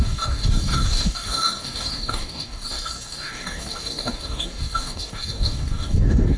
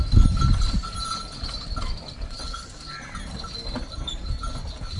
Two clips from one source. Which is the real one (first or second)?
second